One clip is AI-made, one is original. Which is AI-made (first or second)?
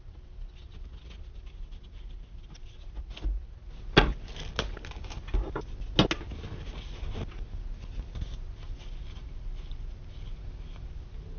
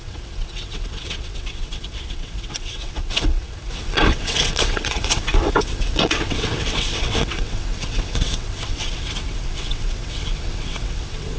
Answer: second